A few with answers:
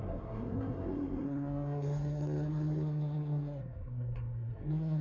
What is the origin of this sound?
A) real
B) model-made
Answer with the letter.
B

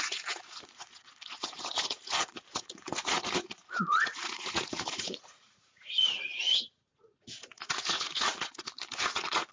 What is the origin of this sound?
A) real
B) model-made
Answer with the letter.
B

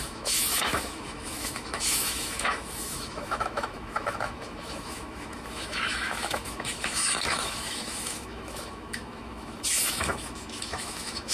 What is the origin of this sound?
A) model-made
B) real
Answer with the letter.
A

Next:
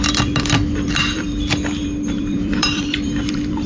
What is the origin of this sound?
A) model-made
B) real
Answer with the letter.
A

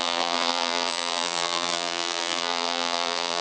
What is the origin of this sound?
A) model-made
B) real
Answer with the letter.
A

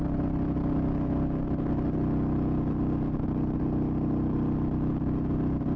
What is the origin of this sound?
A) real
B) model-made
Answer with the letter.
A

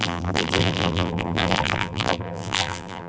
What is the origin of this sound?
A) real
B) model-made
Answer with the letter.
B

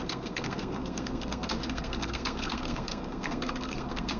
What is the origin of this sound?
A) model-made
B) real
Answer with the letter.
A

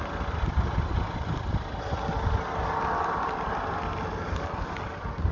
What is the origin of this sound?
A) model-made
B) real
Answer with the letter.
B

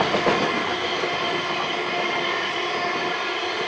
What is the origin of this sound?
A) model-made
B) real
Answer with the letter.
B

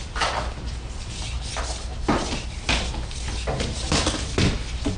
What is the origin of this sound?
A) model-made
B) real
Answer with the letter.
B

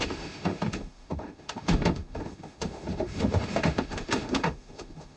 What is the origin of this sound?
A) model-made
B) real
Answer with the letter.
A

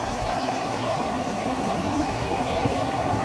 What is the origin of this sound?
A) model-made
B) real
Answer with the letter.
A